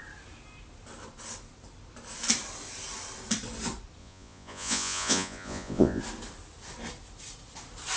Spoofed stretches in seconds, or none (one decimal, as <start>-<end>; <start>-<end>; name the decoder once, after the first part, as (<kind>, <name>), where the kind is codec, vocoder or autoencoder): 4.0-6.0 (vocoder, Vocos)